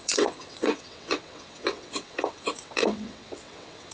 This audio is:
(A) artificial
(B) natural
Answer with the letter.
A